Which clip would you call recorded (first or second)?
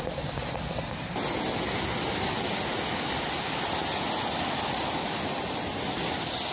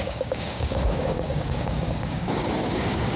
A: first